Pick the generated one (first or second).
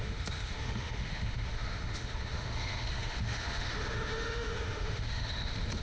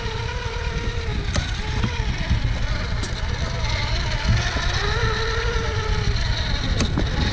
first